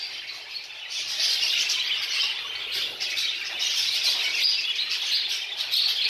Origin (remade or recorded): recorded